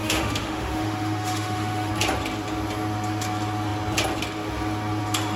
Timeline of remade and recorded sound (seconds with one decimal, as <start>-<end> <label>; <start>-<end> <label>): 0.0-1.9 remade; 1.9-5.4 recorded